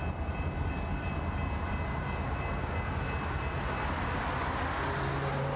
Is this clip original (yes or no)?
yes